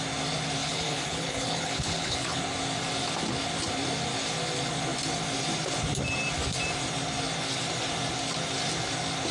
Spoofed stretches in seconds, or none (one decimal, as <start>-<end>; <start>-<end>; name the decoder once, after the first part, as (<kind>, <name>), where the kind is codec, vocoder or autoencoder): 0.6-2.4 (codec, HILCodec)